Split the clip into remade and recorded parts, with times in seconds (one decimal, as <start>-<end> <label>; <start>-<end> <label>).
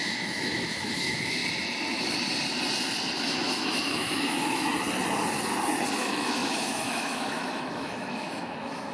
0.0-1.4 remade; 1.4-3.2 recorded; 3.2-4.7 remade; 4.7-6.0 recorded; 6.0-8.9 remade